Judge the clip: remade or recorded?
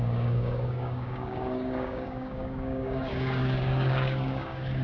remade